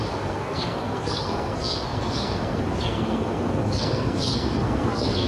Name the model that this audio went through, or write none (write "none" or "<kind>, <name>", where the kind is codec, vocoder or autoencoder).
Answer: codec, SNAC